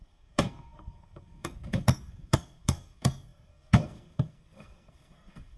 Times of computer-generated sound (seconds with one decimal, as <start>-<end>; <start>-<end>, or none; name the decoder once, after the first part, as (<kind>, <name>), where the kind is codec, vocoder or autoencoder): 0.0-5.6 (codec, SNAC)